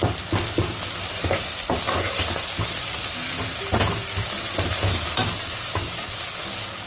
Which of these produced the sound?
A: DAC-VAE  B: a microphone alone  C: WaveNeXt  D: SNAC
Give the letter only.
B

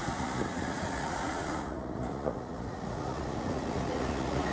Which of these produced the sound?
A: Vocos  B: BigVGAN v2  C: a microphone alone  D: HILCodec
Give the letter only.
A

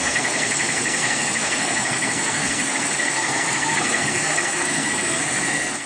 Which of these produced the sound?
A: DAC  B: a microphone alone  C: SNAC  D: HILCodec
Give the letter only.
C